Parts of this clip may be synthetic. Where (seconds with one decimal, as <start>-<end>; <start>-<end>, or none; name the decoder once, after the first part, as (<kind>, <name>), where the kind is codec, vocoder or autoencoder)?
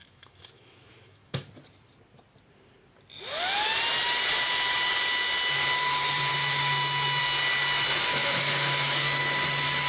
0.0-1.5 (autoencoder, DAC-VAE); 6.3-7.2; 8.1-9.2